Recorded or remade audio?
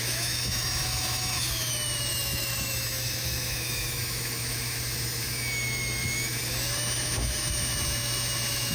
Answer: remade